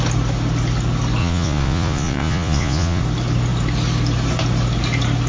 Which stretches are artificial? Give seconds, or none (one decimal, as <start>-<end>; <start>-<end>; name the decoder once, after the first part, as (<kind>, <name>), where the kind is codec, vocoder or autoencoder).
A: 1.2-3.0 (vocoder, Vocos)